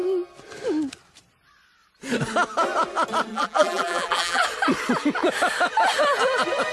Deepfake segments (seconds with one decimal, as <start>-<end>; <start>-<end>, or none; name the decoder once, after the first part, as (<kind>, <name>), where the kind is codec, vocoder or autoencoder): 3.3-4.4 (vocoder, BigVGAN v2)